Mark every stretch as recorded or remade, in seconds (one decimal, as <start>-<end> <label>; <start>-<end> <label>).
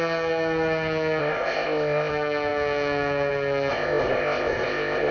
0.0-1.2 recorded; 1.2-2.1 remade; 2.1-3.7 recorded; 3.7-5.1 remade